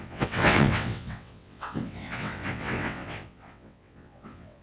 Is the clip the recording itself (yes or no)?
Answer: no